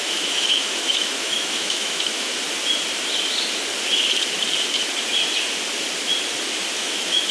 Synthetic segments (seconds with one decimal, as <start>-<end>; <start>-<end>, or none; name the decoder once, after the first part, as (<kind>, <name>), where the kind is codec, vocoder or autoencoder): 0.0-2.3 (autoencoder, DAC-VAE); 6.7-7.3